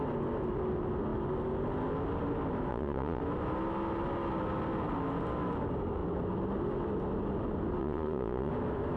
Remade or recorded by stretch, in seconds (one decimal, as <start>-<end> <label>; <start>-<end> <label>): 0.0-2.7 recorded; 2.7-3.2 remade; 3.2-7.8 recorded; 7.8-8.5 remade; 8.5-9.0 recorded